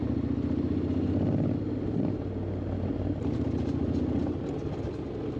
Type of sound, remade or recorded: recorded